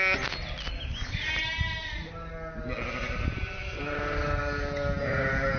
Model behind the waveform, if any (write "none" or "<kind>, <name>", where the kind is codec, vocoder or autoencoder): none